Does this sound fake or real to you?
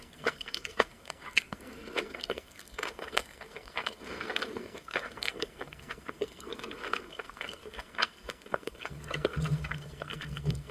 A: fake